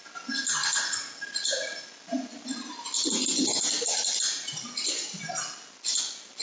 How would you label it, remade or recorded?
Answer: recorded